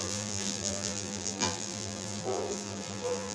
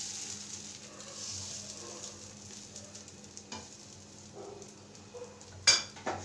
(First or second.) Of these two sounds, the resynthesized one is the first